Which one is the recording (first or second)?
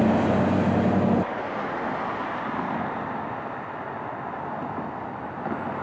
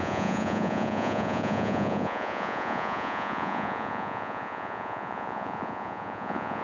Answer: first